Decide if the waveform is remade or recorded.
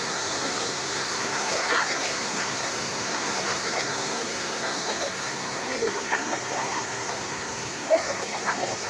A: remade